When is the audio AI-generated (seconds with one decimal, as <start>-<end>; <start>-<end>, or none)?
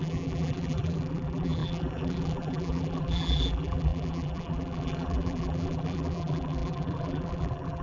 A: 0.0-7.8